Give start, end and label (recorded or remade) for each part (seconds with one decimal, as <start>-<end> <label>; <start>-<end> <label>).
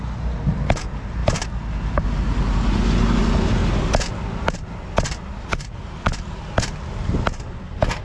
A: 0.0-8.0 recorded